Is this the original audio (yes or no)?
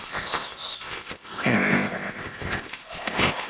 no